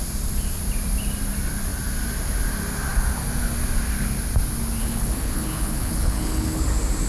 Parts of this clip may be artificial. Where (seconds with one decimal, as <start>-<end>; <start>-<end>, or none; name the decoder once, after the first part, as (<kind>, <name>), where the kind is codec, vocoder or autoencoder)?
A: 4.8-6.6 (codec, HILCodec)